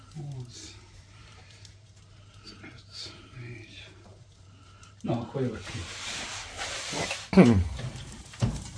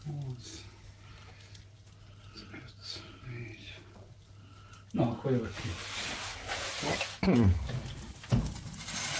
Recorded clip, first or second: second